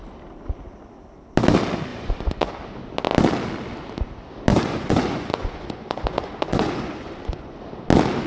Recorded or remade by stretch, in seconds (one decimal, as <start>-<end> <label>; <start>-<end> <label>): 0.0-1.9 recorded; 1.9-2.5 remade; 2.5-4.5 recorded; 4.5-7.6 remade; 7.6-8.3 recorded